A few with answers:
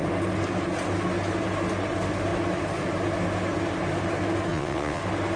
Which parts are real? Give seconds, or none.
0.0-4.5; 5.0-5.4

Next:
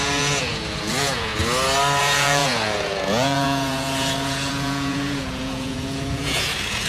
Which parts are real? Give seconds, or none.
1.3-2.0

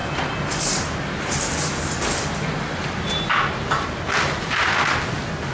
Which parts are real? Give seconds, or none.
0.0-5.5

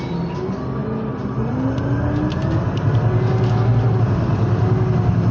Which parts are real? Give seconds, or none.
0.0-5.3